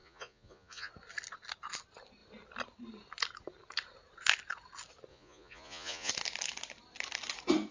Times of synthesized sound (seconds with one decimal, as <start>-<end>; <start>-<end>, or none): 0.0-0.9; 5.1-6.1